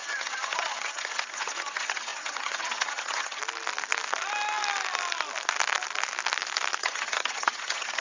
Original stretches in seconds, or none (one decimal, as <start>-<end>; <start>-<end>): 3.4-6.8